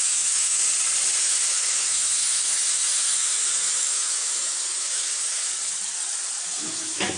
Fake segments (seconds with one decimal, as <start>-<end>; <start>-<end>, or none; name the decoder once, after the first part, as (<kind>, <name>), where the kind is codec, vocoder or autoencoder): 0.0-0.6 (autoencoder, DAC-VAE); 1.2-5.5; 6.4-7.2